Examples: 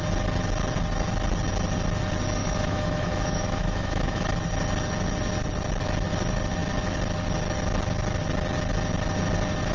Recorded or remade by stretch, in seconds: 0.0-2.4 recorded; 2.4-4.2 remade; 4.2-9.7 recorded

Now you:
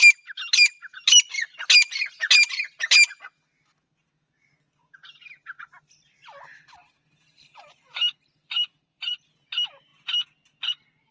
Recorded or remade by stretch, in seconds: 0.0-8.4 recorded; 8.4-9.1 remade; 9.1-11.1 recorded

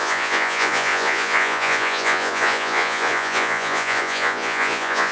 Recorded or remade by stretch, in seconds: 0.0-5.1 remade

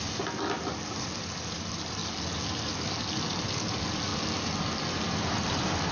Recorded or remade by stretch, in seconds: 0.0-2.0 remade; 2.0-3.2 recorded; 3.2-4.1 remade; 4.1-5.9 recorded

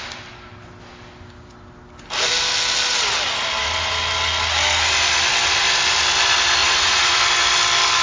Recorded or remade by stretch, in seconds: 0.0-6.6 recorded; 6.6-7.2 remade; 7.2-8.0 recorded